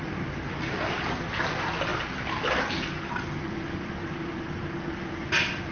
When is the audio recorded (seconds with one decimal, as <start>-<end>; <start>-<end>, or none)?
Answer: 0.0-5.7